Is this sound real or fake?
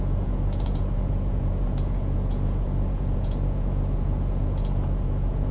fake